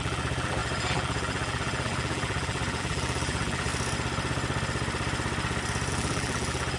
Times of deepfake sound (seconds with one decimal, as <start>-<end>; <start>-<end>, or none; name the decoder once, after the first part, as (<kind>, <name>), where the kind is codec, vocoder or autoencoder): 0.0-3.7 (vocoder, BigVGAN v2); 5.9-6.8